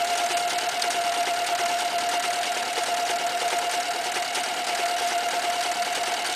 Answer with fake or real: real